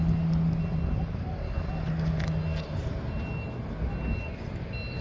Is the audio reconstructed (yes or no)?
no